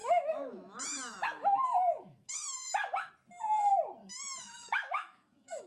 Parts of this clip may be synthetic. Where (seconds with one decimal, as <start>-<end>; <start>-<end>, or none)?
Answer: 0.0-3.1; 4.0-5.7